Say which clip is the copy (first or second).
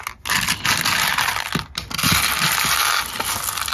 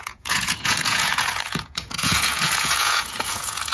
second